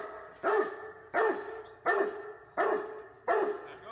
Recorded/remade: recorded